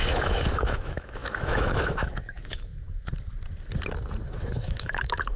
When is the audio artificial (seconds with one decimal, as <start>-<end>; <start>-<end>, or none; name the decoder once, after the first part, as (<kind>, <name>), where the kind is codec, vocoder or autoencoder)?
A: 0.0-2.7 (autoencoder, DAC-VAE); 4.3-5.4